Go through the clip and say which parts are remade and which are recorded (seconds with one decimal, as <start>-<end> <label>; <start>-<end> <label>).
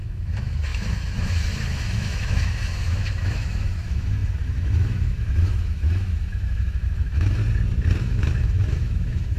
0.0-7.4 remade; 7.4-8.0 recorded; 8.0-9.4 remade